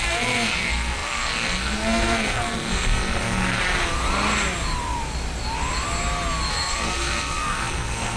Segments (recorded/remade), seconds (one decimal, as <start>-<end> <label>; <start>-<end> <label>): 0.0-3.6 remade; 3.6-6.5 recorded; 6.5-8.2 remade